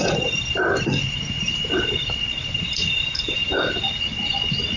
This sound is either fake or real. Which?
real